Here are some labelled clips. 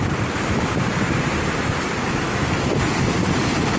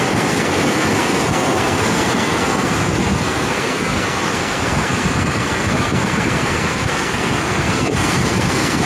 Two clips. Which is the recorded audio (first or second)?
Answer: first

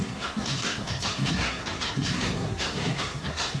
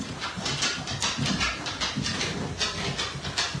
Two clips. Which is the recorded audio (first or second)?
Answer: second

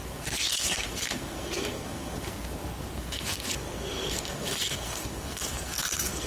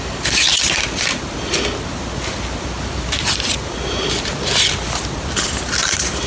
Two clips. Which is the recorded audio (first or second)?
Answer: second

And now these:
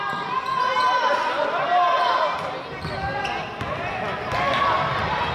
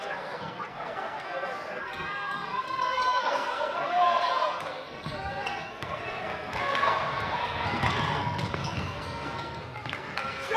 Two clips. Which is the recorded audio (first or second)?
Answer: first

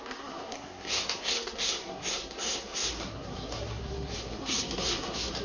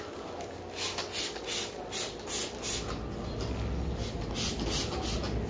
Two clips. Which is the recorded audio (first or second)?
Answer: second